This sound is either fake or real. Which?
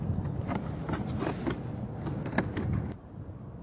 real